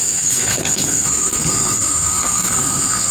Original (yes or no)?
no